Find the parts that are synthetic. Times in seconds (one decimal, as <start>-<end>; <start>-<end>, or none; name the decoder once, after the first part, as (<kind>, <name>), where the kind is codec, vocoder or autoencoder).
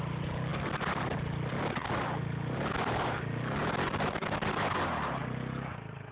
none